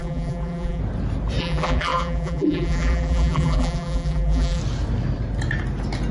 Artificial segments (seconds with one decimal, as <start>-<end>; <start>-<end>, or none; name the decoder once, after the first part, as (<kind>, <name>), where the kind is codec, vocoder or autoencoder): 0.0-0.8 (vocoder, BigVGAN v2); 1.4-4.6